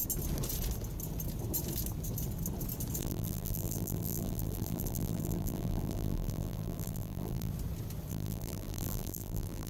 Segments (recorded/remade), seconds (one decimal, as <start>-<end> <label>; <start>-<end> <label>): 0.0-3.0 recorded; 3.0-7.5 remade; 7.5-8.1 recorded; 8.1-9.7 remade